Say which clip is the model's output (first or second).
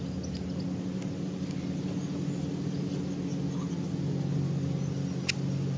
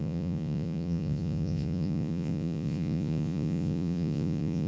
second